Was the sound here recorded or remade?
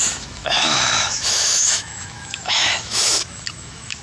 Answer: remade